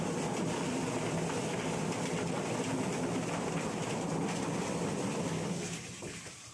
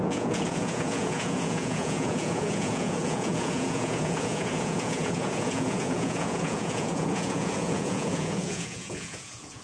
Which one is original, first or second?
first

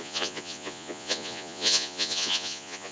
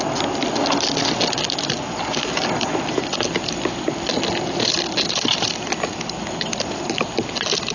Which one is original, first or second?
second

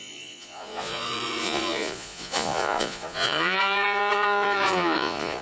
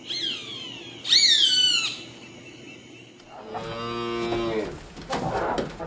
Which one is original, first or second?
second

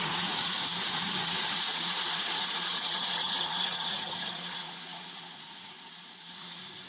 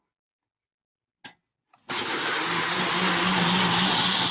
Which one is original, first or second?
second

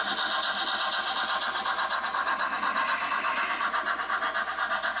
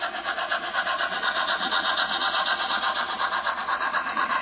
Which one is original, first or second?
first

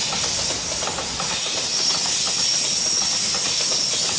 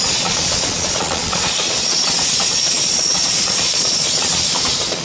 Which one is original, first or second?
first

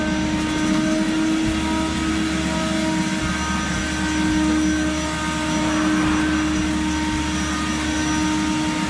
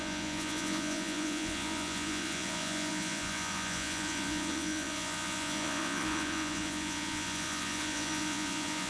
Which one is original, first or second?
first